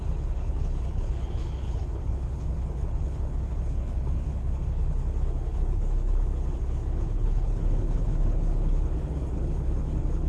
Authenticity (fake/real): fake